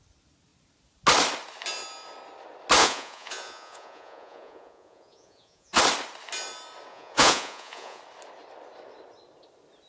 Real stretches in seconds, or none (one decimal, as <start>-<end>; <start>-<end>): 0.0-2.8; 5.8-6.9; 8.0-9.9